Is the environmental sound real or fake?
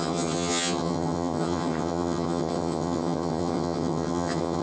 fake